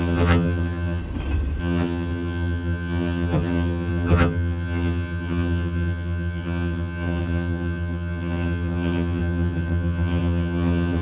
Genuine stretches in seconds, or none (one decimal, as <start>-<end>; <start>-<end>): 1.0-1.6